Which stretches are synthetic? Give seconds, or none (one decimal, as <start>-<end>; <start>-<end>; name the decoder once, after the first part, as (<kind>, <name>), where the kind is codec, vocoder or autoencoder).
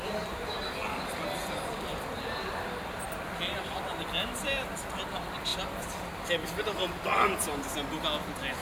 none